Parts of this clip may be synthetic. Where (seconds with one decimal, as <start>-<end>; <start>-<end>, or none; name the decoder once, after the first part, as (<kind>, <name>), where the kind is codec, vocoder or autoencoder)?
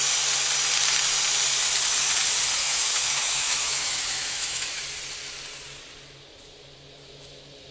2.6-4.8 (autoencoder, DAC-VAE)